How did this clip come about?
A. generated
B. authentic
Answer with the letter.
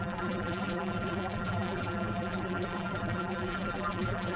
A